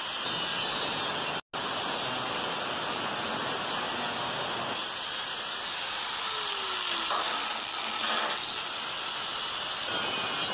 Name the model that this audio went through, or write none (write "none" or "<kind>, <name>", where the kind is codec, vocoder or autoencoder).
none